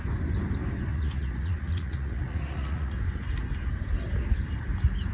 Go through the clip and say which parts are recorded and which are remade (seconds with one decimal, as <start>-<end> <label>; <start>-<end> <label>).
0.0-0.9 recorded; 0.9-3.0 remade; 3.0-5.1 recorded

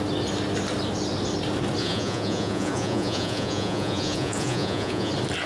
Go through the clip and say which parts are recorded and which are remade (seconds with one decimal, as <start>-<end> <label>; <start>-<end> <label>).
0.0-1.8 recorded; 1.8-5.1 remade; 5.1-5.5 recorded

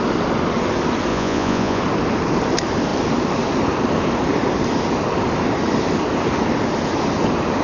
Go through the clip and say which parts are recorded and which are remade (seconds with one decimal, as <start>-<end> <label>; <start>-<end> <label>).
0.0-1.1 recorded; 1.1-1.8 remade; 1.8-7.6 recorded

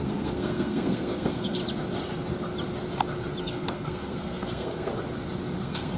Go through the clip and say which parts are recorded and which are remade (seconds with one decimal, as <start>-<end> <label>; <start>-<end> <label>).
0.0-1.6 remade; 1.6-3.4 recorded; 3.4-4.9 remade; 4.9-5.6 recorded; 5.6-6.0 remade

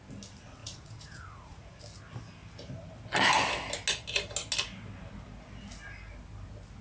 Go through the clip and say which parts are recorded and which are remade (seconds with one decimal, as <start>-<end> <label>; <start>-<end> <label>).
0.0-0.6 recorded; 0.6-1.8 remade; 1.8-6.8 recorded

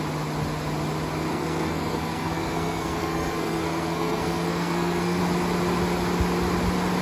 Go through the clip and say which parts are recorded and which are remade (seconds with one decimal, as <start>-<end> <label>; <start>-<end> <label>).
0.0-1.3 recorded; 1.3-5.2 remade; 5.2-7.0 recorded

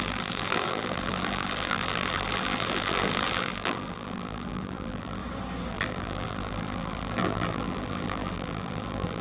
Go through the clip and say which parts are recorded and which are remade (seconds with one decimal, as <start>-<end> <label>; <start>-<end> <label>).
0.0-5.2 remade; 5.2-5.7 recorded; 5.7-9.2 remade

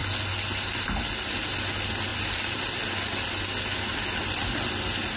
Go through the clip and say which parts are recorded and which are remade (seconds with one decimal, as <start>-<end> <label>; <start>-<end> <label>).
0.0-5.2 recorded